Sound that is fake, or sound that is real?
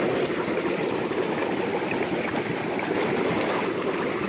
real